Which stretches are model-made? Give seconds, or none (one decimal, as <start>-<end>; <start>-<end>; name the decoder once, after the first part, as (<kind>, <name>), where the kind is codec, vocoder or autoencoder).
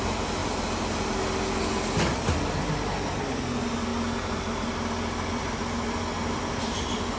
none